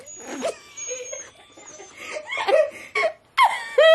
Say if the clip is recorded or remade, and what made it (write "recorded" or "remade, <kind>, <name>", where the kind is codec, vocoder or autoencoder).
recorded